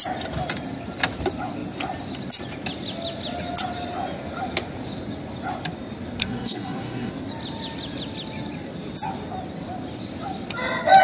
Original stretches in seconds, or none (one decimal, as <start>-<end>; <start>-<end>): 0.0-6.2; 7.1-11.0